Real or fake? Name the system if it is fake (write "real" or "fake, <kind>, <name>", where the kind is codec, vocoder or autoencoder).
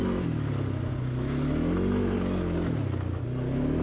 real